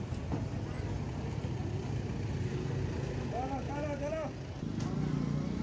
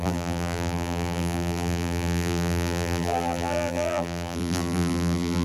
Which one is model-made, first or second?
second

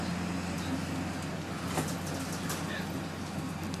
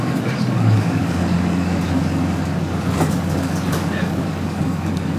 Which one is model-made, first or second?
second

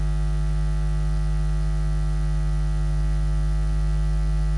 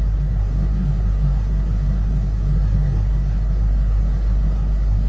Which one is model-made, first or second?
second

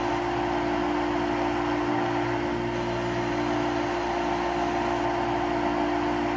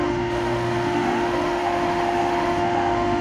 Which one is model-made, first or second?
second